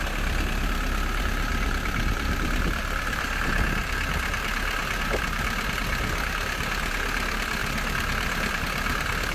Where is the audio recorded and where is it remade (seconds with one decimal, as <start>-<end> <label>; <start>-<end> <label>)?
0.0-1.5 recorded; 1.5-4.1 remade; 4.1-9.3 recorded